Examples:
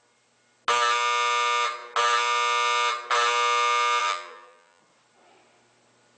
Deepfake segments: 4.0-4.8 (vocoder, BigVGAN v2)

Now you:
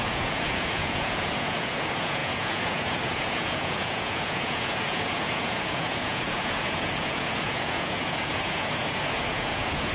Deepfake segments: 0.0-9.9 (vocoder, Vocos)

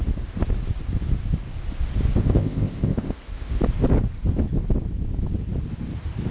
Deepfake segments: 2.2-3.6 (codec, ZipCodec)

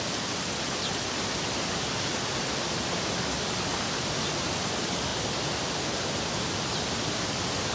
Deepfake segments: none

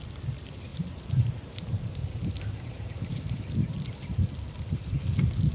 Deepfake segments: 0.7-4.0 (vocoder, BigVGAN v2)

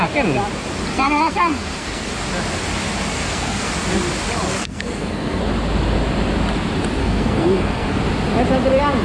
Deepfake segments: 0.9-2.1 (codec, SNAC); 3.1-3.7; 4.5-5.4; 7.0-8.0

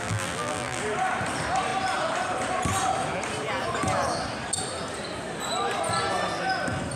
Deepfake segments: 0.0-0.8 (vocoder, BigVGAN v2)

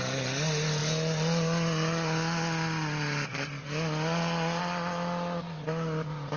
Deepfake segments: none